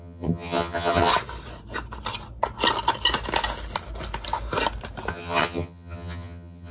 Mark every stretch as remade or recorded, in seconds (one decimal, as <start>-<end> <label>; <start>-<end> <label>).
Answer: 0.0-1.1 remade; 1.1-5.1 recorded; 5.1-6.7 remade